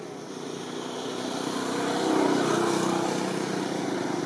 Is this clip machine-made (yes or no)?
no